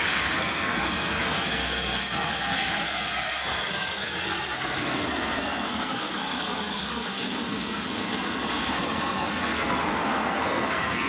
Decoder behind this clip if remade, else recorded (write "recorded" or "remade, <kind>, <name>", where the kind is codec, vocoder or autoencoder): remade, codec, SNAC